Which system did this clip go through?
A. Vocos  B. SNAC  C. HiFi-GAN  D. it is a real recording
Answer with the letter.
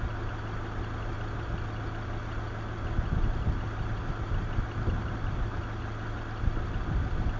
D